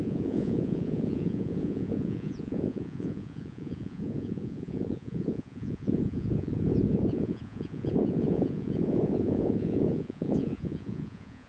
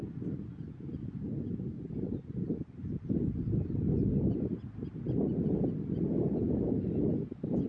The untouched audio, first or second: second